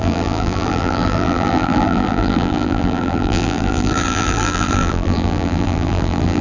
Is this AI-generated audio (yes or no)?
yes